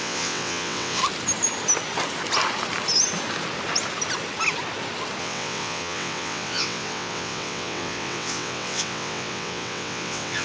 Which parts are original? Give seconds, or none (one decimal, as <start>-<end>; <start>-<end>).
1.0-5.2